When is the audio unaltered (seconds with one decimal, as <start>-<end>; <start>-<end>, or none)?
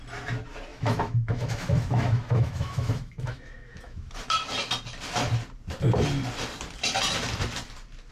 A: 0.0-0.7; 4.1-8.1